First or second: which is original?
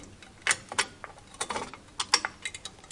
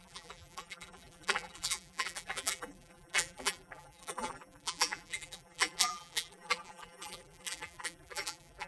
first